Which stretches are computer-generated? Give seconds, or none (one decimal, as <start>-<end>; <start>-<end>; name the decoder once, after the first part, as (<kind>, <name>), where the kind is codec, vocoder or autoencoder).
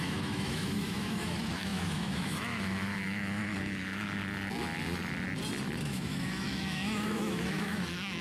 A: 0.0-4.2 (autoencoder, DAC-VAE); 5.8-8.2